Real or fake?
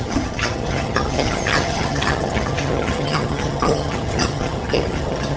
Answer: fake